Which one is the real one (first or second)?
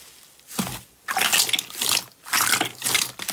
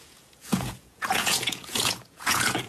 first